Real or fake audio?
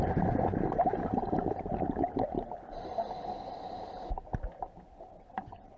real